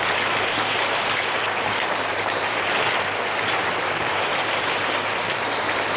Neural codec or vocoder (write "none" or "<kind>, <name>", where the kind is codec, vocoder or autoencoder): vocoder, BigVGAN v2